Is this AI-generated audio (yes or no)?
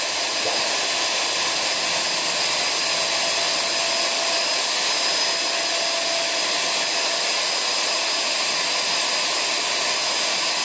no